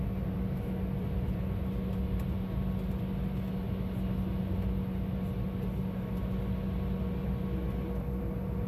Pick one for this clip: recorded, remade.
recorded